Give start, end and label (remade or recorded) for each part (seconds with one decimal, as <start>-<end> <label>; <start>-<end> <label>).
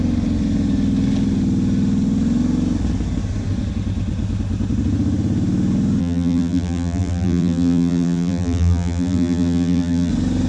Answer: 0.0-6.0 recorded; 6.0-10.1 remade; 10.1-10.5 recorded